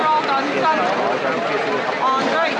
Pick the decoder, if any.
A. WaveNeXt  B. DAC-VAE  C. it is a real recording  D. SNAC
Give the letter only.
C